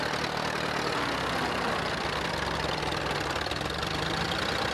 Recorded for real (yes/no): yes